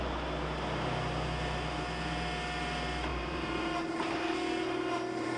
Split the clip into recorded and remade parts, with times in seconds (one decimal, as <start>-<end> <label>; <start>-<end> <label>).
0.0-3.1 recorded; 3.1-4.2 remade; 4.2-5.4 recorded